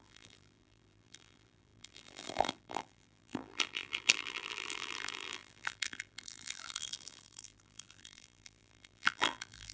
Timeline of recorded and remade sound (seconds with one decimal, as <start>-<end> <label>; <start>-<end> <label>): 0.0-9.7 remade